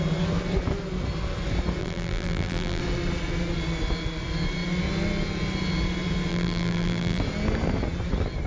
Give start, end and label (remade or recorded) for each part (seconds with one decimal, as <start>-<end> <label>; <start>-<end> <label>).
0.0-1.8 recorded; 1.8-2.8 remade; 2.8-6.3 recorded; 6.3-7.2 remade; 7.2-8.5 recorded